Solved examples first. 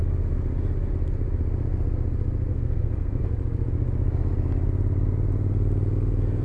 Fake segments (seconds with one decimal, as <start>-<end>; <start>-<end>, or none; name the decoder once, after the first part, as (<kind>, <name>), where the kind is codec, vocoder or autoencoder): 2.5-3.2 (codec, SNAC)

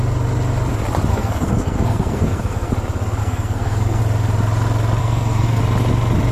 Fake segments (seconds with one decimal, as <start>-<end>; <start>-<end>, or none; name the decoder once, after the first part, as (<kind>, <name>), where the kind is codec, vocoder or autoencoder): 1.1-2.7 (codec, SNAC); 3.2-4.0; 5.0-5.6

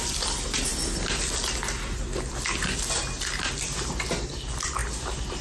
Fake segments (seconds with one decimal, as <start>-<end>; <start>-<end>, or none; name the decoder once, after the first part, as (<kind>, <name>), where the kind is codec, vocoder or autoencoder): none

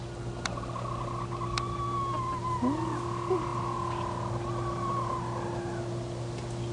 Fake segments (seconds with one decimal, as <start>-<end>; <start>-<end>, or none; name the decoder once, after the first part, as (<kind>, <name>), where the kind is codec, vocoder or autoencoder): none